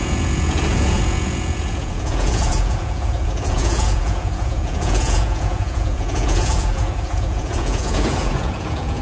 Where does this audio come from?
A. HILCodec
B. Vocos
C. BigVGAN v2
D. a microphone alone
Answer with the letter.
B